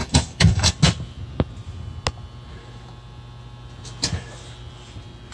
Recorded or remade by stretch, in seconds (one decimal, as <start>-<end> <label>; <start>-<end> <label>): 0.0-0.7 remade; 0.7-5.3 recorded